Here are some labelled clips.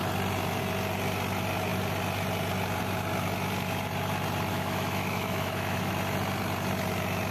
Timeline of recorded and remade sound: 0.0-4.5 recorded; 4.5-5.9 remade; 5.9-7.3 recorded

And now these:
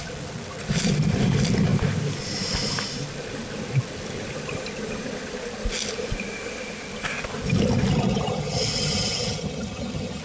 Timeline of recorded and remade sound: 0.0-7.9 recorded; 7.9-10.2 remade

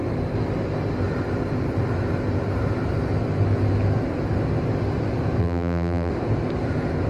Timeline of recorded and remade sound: 0.0-5.4 recorded; 5.4-6.1 remade; 6.1-7.1 recorded

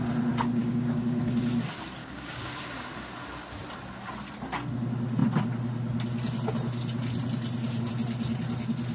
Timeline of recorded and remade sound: 0.0-0.6 recorded; 0.6-1.4 remade; 1.4-2.0 recorded; 2.0-2.5 remade; 2.5-8.9 recorded

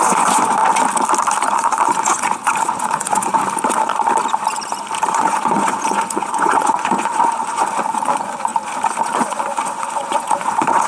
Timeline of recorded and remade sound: 0.0-0.6 remade; 0.6-1.5 recorded; 1.5-3.3 remade; 3.3-5.1 recorded; 5.1-8.5 remade; 8.5-9.0 recorded; 9.0-10.9 remade